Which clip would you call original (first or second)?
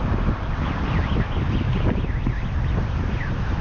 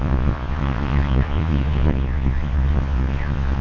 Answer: first